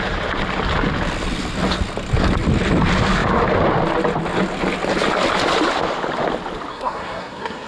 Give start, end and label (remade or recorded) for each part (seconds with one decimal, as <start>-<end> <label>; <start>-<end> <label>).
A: 0.0-6.7 recorded; 6.7-7.7 remade